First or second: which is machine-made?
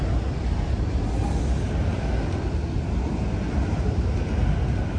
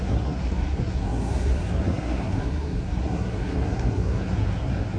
second